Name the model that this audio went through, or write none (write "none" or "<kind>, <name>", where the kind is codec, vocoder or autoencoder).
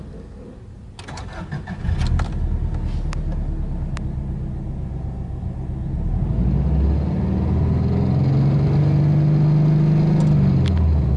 none